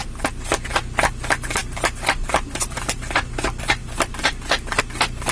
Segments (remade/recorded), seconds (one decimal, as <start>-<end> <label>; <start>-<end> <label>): 0.0-0.5 remade; 0.5-5.3 recorded